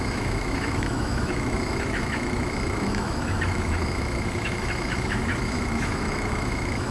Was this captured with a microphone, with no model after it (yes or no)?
no